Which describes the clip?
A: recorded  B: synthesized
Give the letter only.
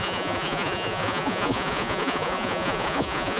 B